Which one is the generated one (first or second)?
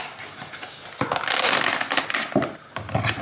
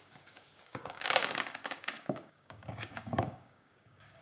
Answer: second